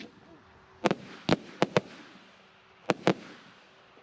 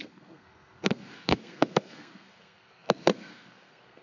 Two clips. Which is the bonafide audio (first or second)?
first